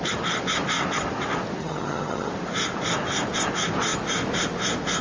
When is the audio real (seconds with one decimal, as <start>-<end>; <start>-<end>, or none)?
0.0-1.6; 2.3-5.0

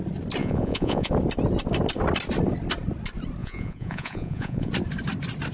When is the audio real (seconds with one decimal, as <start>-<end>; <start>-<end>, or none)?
0.0-0.4; 1.1-3.4; 4.7-5.5

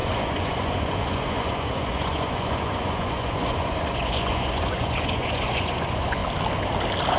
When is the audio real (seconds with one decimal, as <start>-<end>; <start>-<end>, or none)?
6.2-7.2

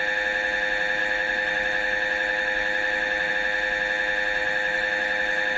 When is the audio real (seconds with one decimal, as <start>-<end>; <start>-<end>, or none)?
0.0-1.0; 3.3-4.4

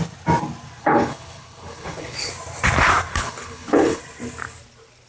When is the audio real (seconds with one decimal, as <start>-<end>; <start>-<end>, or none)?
0.0-0.8; 2.3-3.1; 4.0-5.1

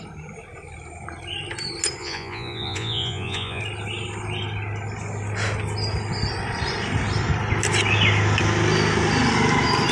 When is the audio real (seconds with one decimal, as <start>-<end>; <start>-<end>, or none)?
0.0-2.0; 3.6-9.9